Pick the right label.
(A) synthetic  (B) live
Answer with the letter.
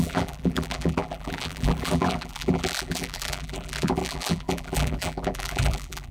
A